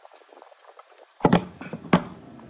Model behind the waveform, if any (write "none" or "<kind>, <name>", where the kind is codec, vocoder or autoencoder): none